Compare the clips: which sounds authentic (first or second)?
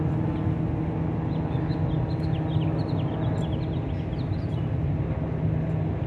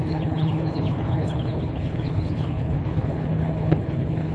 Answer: first